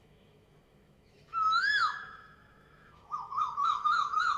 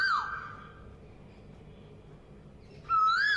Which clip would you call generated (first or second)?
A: first